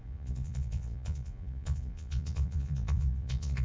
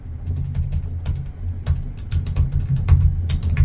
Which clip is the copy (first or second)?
first